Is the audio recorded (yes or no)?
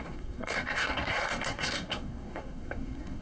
no